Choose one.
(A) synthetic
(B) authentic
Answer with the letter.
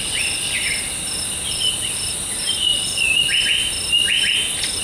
B